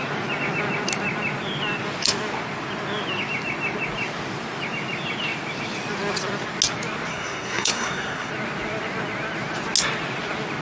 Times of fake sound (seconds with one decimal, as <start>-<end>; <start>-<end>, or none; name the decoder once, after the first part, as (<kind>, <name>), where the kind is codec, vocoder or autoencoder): 7.1-8.3 (codec, SNAC)